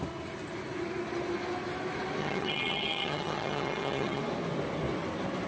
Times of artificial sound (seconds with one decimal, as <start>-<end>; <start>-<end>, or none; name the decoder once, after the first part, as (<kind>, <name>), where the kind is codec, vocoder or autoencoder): 2.2-4.2 (vocoder, HiFi-GAN)